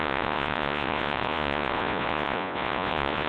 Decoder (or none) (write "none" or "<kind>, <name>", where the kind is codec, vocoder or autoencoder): vocoder, Vocos